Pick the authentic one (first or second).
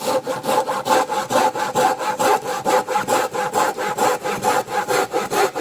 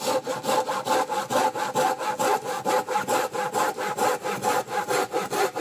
second